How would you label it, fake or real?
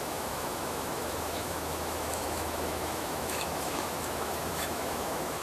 fake